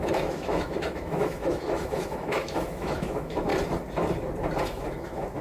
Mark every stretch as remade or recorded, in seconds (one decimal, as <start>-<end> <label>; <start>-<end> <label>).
0.0-3.5 remade; 3.5-4.6 recorded; 4.6-5.4 remade